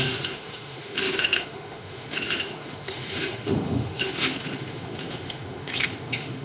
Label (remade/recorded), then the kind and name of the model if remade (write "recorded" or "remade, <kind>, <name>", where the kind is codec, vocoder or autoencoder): remade, autoencoder, DAC-VAE